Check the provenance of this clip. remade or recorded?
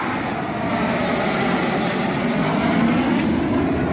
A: recorded